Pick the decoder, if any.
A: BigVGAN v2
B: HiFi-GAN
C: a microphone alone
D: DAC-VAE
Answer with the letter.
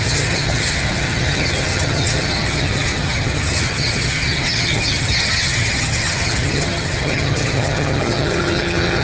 B